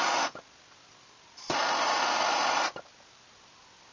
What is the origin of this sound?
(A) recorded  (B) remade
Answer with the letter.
A